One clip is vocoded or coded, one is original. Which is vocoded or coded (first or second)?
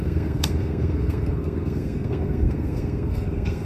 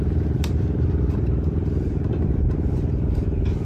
first